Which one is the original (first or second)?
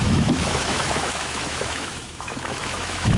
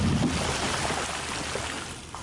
second